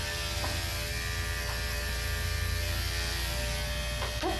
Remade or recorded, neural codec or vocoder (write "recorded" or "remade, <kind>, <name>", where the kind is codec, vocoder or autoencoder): recorded